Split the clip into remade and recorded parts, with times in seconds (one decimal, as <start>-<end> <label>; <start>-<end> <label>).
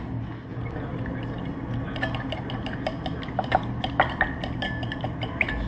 0.0-5.7 recorded